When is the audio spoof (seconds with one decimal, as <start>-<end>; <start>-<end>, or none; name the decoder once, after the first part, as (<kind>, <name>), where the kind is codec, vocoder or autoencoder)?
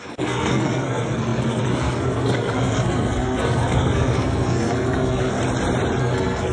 0.0-5.4 (codec, SNAC); 6.0-6.5